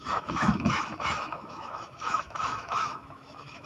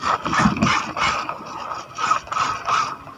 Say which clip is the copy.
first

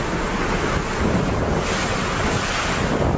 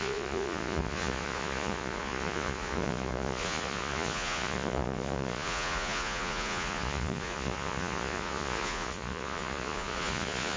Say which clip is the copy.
second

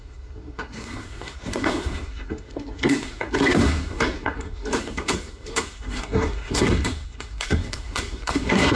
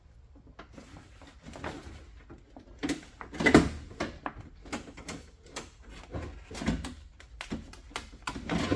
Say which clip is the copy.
first